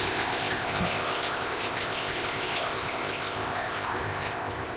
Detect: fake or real fake